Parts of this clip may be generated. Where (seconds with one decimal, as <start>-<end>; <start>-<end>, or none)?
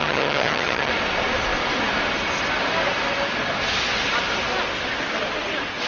0.0-0.9